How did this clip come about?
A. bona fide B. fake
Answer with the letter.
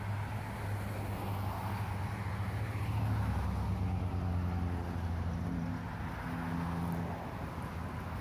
A